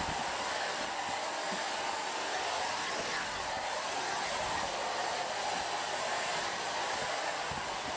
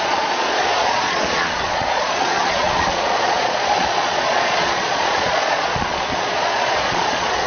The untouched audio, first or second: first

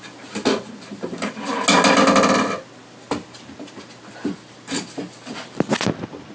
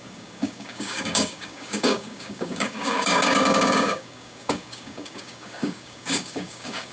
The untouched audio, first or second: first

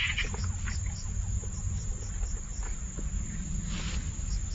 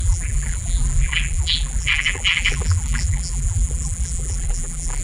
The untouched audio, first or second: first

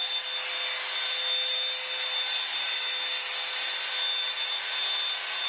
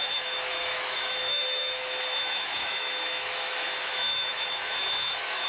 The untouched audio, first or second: first